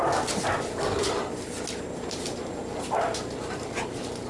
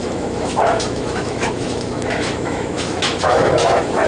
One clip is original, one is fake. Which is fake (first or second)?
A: second